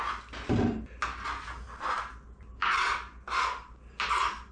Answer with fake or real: real